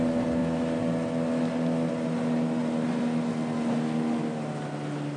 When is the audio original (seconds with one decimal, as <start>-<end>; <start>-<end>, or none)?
0.0-5.2